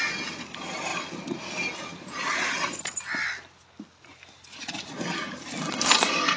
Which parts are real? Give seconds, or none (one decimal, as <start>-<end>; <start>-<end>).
0.0-6.4